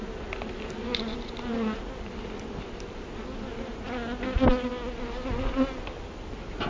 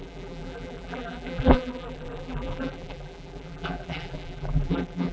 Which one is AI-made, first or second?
second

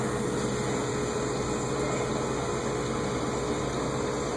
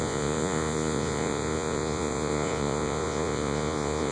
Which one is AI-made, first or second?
second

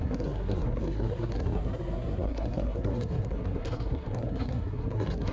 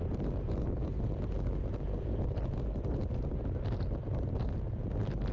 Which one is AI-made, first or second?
first